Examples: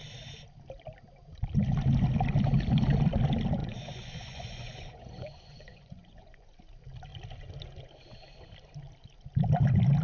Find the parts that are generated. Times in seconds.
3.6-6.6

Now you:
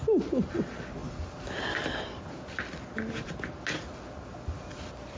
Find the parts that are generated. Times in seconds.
none